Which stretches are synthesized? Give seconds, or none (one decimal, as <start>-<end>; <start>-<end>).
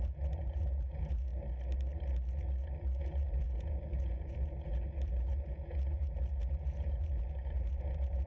0.0-1.3; 3.0-8.3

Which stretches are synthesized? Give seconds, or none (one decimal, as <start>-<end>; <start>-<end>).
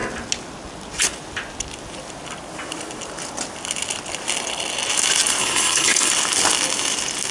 5.4-6.1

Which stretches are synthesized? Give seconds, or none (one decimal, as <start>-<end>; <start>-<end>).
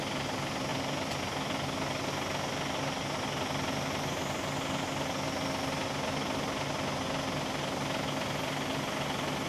0.7-1.2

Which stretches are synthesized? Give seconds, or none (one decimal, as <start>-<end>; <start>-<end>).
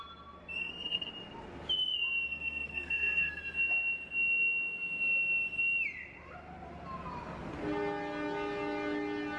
0.6-1.1; 2.3-3.4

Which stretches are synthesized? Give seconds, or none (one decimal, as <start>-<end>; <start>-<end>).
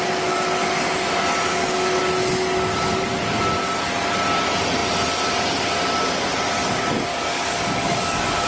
1.5-2.0; 7.1-8.5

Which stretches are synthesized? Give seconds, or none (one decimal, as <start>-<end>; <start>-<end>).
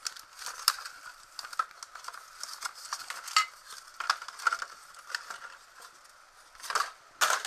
none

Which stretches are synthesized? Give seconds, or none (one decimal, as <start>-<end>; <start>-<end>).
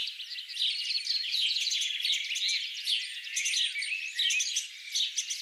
1.3-1.9; 2.7-3.5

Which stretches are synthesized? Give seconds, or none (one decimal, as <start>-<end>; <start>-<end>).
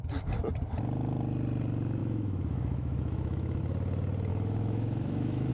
2.0-3.6; 4.3-5.5